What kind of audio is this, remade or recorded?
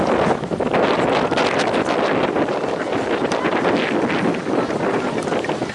recorded